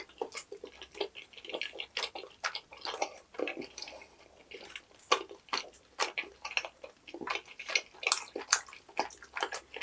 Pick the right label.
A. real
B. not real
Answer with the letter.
A